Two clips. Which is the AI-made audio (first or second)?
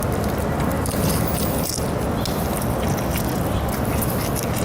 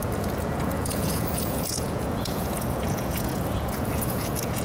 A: second